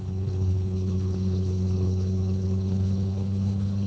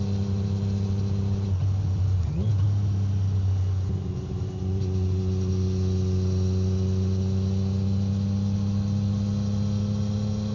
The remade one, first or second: first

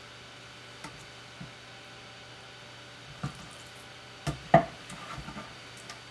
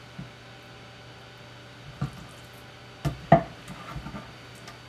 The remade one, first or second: first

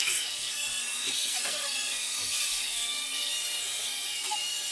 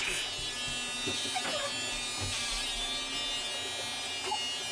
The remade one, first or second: first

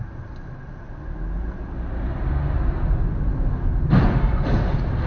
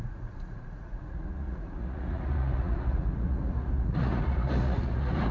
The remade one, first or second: second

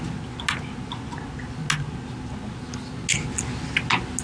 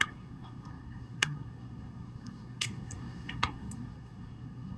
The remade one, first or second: second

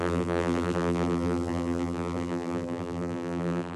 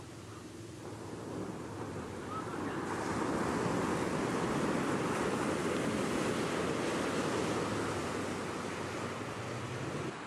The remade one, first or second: first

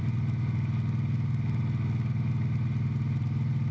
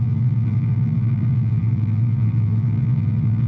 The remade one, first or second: second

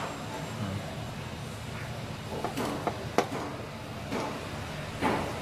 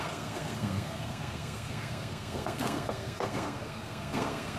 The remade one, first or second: second